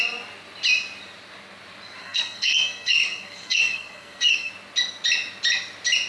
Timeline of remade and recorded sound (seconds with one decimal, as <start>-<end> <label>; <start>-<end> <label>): 0.0-2.0 recorded; 2.0-4.5 remade; 4.5-6.1 recorded